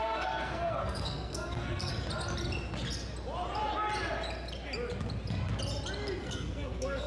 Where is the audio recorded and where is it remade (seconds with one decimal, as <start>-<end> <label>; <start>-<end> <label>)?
0.0-1.9 remade; 1.9-6.2 recorded; 6.2-7.1 remade